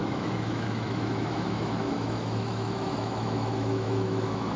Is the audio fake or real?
fake